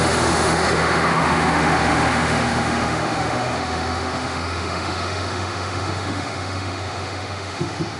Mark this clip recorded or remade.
remade